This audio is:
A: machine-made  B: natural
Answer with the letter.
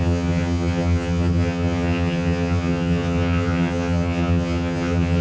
A